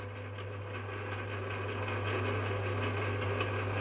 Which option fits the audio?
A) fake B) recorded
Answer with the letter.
B